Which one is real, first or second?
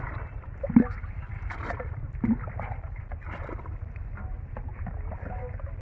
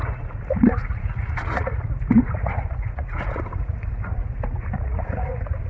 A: first